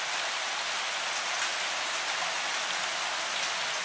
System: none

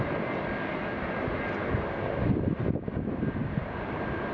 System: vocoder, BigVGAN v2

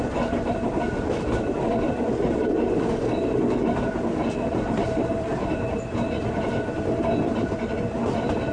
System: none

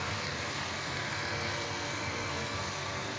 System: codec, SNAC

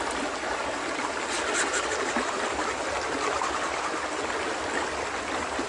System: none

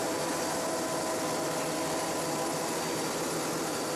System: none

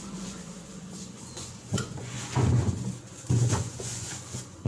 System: vocoder, Vocos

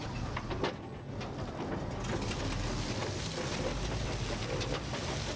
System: none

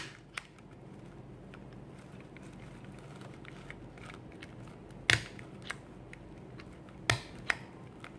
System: none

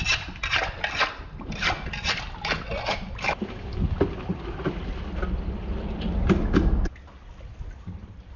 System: none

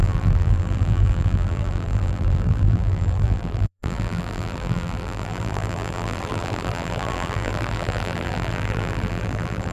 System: vocoder, BigVGAN v2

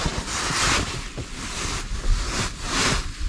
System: none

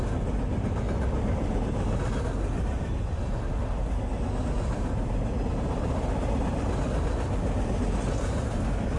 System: none